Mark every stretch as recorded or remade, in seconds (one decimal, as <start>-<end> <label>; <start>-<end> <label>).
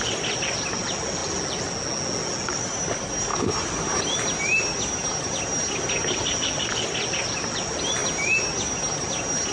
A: 0.0-9.5 recorded